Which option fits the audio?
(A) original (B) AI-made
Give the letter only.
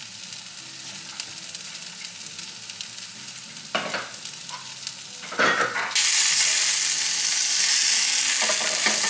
A